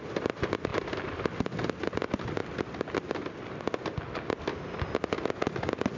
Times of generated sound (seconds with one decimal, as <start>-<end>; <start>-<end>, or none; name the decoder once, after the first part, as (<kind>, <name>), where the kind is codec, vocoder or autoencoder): none